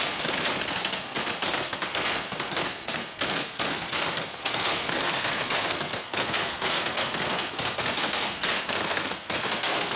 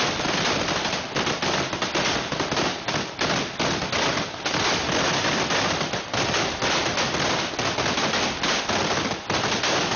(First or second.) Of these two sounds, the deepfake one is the first